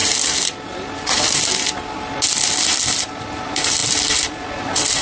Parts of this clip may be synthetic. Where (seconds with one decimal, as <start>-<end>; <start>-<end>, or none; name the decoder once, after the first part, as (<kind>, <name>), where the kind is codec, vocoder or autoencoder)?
none